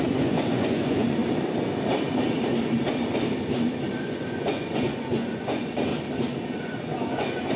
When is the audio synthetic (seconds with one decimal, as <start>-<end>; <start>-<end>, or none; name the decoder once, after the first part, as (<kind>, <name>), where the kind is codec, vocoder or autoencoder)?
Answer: 0.0-1.2 (vocoder, Vocos); 4.0-5.9; 6.6-7.6